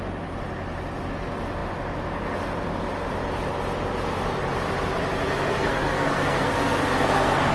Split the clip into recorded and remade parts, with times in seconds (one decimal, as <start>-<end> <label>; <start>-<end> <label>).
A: 0.0-5.5 recorded; 5.5-7.5 remade